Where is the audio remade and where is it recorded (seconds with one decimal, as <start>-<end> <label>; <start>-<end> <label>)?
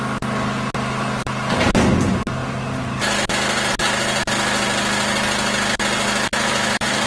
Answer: 0.0-6.3 recorded; 6.3-7.1 remade